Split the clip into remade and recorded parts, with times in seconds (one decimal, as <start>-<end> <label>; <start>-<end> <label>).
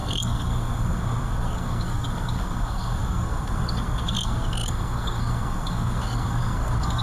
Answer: 0.0-7.0 remade